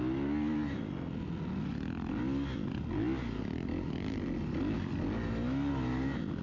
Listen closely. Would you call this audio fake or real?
real